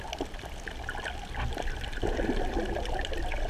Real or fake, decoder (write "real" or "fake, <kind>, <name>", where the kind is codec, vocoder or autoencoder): real